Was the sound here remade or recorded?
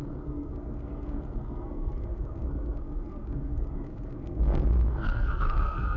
remade